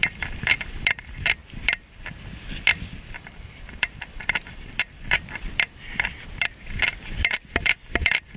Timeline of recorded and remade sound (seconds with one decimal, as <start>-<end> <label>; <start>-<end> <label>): 0.0-2.7 recorded; 2.7-5.1 remade; 5.1-8.4 recorded